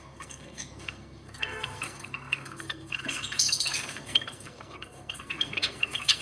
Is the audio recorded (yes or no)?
no